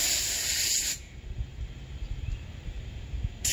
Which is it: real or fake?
fake